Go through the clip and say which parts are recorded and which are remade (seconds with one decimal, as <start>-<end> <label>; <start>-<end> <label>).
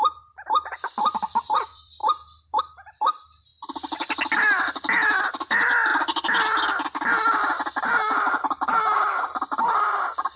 0.0-2.0 remade; 2.0-2.6 recorded; 2.6-3.5 remade; 3.5-5.2 recorded; 5.2-5.9 remade; 5.9-9.8 recorded; 9.8-10.4 remade